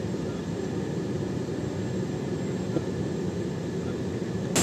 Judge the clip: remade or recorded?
recorded